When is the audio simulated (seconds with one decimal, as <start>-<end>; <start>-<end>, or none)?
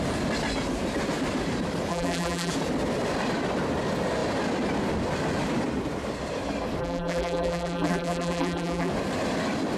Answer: 1.9-2.5; 6.8-8.9